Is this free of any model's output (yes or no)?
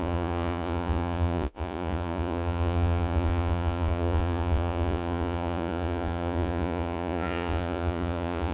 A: no